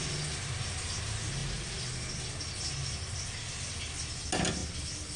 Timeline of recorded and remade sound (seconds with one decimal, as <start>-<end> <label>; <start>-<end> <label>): 0.0-5.2 recorded